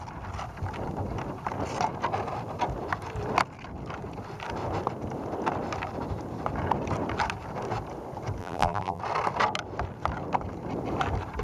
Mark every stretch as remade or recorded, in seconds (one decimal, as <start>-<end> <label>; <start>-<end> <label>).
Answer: 0.0-8.4 recorded; 8.4-9.0 remade; 9.0-11.4 recorded